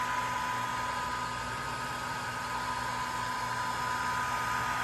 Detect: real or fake real